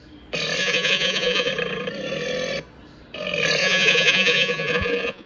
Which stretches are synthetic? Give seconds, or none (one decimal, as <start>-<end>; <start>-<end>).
0.6-1.5; 3.6-5.3